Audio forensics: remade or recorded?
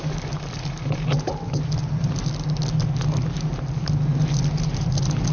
recorded